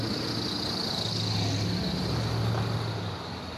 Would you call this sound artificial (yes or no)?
no